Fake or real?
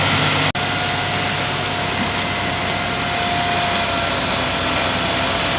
real